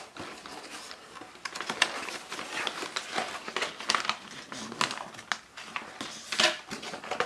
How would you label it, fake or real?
real